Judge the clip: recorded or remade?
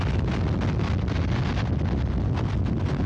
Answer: recorded